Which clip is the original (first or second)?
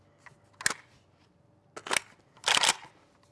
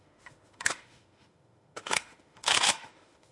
first